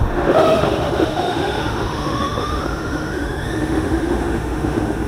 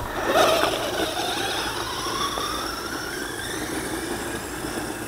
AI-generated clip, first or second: first